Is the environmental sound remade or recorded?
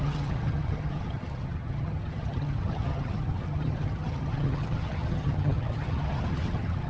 remade